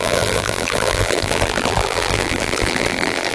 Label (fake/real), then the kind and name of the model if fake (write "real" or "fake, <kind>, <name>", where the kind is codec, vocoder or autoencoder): fake, vocoder, BigVGAN v2